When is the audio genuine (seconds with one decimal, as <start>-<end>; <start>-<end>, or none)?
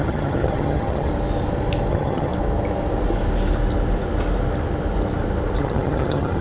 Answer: 1.1-1.9; 2.3-5.6